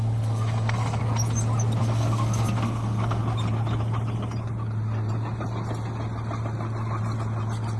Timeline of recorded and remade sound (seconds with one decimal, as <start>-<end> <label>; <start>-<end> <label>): 0.0-1.0 remade; 1.0-1.8 recorded; 1.8-3.2 remade; 3.2-7.8 recorded